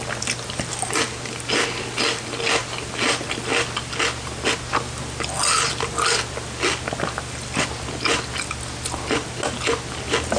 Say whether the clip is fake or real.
real